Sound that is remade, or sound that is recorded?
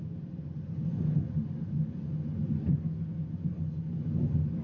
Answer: recorded